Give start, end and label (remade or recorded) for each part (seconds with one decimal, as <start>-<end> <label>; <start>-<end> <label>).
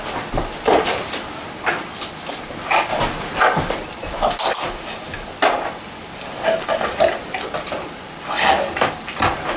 0.0-9.6 recorded